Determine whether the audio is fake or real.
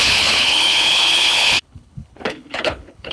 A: fake